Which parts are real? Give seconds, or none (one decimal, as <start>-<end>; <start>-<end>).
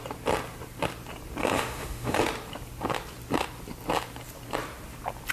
0.0-1.4; 2.2-5.3